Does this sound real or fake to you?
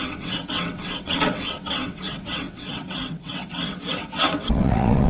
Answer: fake